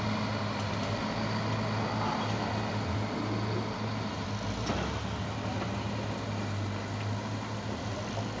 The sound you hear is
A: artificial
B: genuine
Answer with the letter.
B